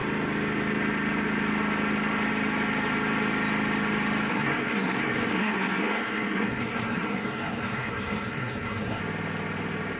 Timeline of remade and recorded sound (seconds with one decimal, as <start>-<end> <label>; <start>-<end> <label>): 0.0-4.3 recorded; 4.3-9.0 remade; 9.0-10.0 recorded